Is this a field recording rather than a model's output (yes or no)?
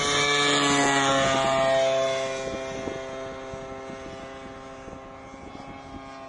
yes